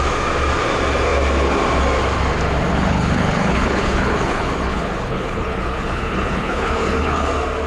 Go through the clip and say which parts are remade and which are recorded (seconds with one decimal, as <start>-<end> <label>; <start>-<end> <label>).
0.0-2.7 recorded; 2.7-7.3 remade; 7.3-7.7 recorded